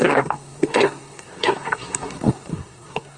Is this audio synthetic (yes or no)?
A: yes